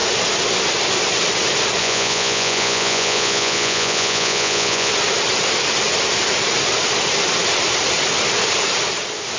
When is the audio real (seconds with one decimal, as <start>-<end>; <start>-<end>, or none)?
0.0-1.8; 4.9-9.4